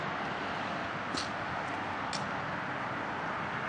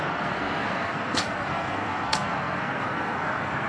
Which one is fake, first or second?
second